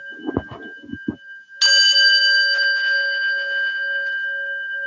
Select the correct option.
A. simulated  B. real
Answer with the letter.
B